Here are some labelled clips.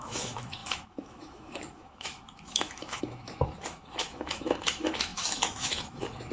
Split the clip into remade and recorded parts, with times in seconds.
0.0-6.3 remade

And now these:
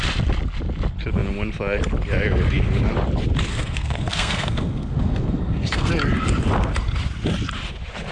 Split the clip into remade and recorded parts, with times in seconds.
0.0-3.5 recorded; 3.5-5.9 remade; 5.9-8.1 recorded

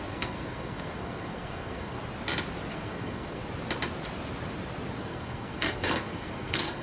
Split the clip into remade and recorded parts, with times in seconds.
0.0-2.0 remade; 2.0-2.7 recorded; 2.7-3.4 remade; 3.4-5.0 recorded; 5.0-6.8 remade

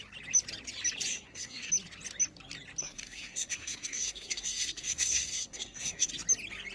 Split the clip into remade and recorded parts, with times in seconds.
0.0-1.1 recorded; 1.1-1.7 remade; 1.7-2.8 recorded; 2.8-6.1 remade; 6.1-6.7 recorded

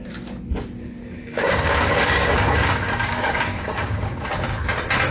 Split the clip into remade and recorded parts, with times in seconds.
0.0-1.2 recorded; 1.2-4.3 remade; 4.3-5.1 recorded